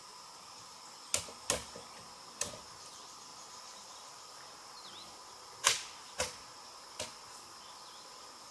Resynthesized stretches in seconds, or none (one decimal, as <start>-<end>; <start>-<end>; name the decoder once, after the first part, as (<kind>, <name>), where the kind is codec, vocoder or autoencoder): none